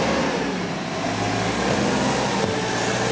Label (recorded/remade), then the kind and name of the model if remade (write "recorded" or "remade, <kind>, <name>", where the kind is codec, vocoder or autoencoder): recorded